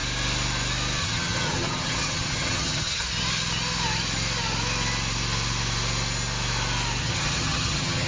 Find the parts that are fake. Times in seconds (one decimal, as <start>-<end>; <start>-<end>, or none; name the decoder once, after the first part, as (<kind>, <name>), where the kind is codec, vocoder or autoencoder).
1.0-3.0 (vocoder, HiFi-GAN); 7.0-8.1